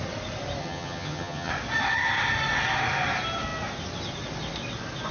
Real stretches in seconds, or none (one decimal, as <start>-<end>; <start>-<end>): 0.0-0.6; 1.5-5.1